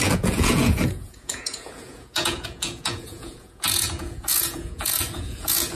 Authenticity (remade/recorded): remade